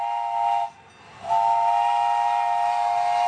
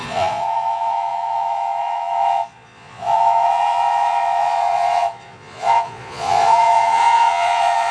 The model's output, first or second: second